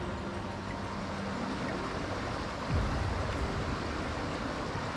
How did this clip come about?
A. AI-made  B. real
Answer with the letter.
B